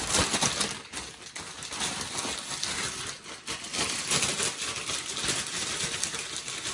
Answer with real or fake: real